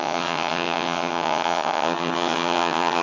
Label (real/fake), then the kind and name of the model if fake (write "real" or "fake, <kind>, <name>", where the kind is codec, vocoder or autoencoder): fake, vocoder, HiFi-GAN